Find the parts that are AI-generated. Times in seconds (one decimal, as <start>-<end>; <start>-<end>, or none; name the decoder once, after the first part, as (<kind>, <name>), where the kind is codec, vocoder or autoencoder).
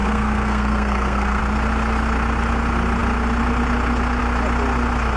0.0-1.4 (codec, SNAC)